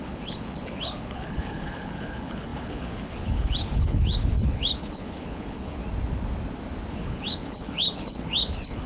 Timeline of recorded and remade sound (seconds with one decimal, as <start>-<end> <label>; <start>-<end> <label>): 0.0-5.8 remade; 5.8-6.9 recorded; 6.9-8.9 remade